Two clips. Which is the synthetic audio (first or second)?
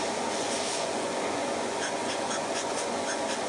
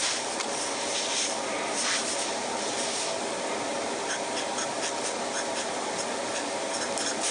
first